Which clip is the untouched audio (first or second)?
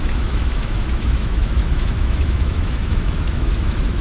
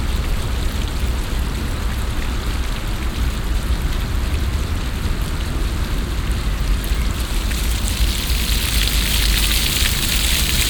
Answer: second